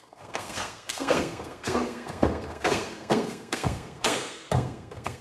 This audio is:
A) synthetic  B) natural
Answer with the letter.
A